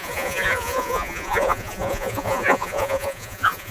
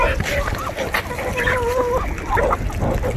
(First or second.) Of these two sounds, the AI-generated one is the first